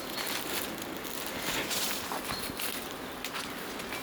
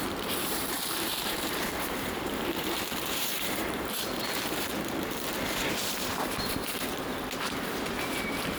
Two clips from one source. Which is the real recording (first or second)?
first